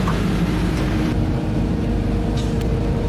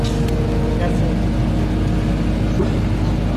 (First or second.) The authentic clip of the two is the second